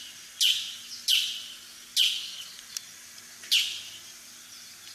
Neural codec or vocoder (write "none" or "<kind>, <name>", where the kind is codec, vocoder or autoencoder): none